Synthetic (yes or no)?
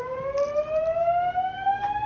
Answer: no